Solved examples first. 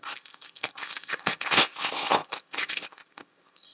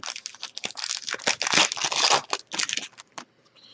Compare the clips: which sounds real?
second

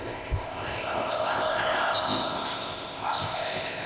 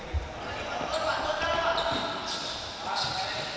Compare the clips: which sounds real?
second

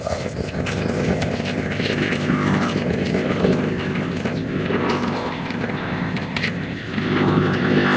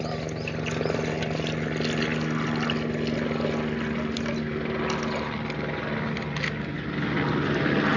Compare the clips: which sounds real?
second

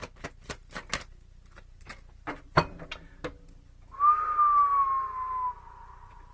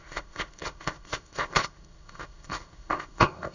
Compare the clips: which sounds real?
first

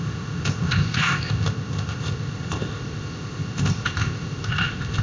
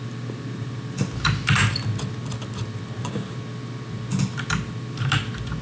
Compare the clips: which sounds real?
second